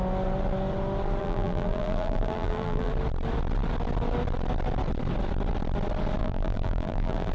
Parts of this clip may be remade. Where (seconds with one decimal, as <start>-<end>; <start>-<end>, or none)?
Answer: 1.2-2.9; 6.2-7.3